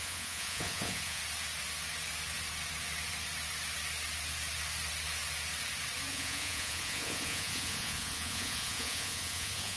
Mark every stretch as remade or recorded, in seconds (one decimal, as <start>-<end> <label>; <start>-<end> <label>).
0.0-1.2 remade; 1.2-6.1 recorded; 6.1-9.8 remade